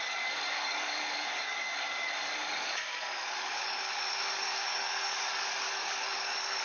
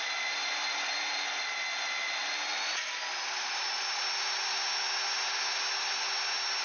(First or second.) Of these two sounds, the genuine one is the second